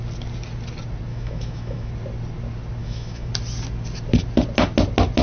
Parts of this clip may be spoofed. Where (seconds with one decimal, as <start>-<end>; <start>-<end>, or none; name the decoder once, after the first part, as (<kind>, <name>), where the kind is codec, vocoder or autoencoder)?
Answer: 1.1-1.9 (autoencoder, DAC-VAE); 2.8-3.3